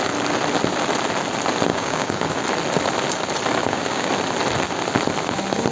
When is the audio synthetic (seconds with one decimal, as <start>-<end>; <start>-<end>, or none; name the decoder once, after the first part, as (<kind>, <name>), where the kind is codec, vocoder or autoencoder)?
1.7-2.3 (codec, DAC); 3.6-4.1